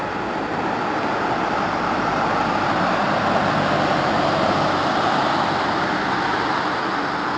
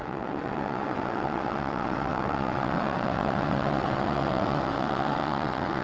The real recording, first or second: first